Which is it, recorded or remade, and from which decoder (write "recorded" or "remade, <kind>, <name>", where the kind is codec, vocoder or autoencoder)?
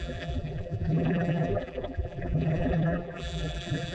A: remade, vocoder, BigVGAN v2